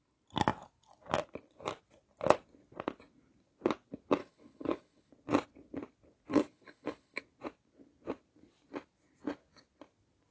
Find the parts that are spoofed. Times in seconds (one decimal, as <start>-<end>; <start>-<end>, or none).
4.2-5.1; 6.3-7.2